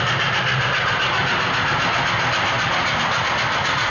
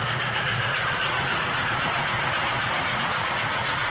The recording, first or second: first